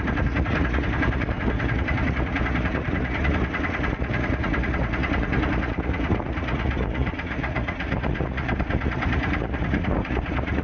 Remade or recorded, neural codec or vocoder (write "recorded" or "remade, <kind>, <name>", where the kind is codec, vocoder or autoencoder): remade, vocoder, Vocos